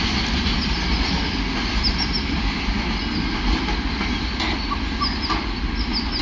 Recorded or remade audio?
recorded